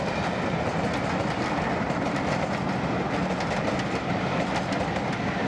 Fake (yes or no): no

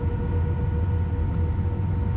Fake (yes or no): no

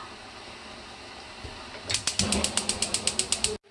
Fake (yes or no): no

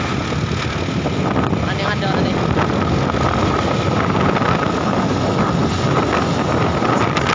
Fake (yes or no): no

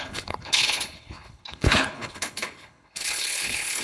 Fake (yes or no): yes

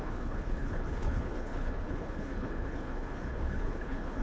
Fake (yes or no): yes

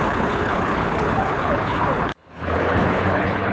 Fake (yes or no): yes